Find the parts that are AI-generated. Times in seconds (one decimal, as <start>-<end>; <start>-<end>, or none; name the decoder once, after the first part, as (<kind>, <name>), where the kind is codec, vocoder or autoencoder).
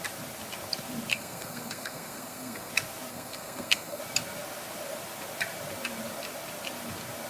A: 1.1-2.7 (codec, SNAC); 3.1-4.0